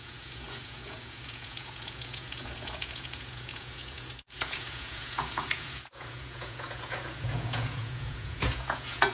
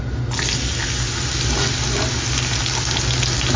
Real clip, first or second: second